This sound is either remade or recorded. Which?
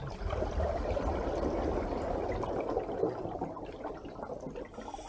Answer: recorded